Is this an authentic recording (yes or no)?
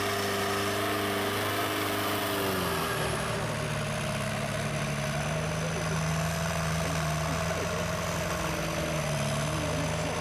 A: yes